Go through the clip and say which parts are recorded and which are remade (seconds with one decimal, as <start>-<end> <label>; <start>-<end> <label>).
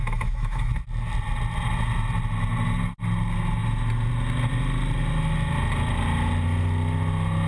0.0-0.7 remade; 0.7-7.5 recorded